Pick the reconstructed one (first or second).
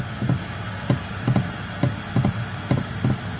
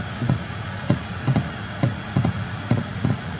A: second